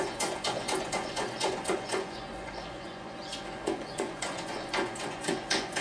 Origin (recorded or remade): remade